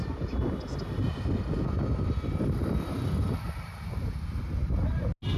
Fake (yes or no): no